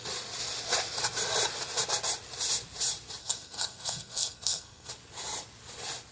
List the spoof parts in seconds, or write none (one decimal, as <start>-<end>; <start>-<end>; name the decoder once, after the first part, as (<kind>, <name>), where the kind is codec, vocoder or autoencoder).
3.2-4.9 (codec, SNAC)